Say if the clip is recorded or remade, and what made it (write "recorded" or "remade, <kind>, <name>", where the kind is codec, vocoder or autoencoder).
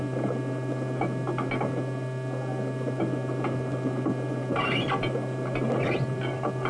recorded